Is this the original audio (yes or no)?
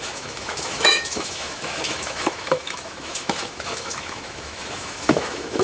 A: no